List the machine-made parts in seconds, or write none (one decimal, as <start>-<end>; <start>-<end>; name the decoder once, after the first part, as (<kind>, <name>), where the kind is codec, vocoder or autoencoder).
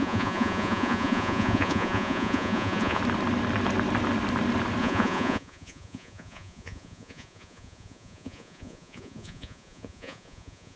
0.0-3.0 (vocoder, Vocos); 4.8-10.8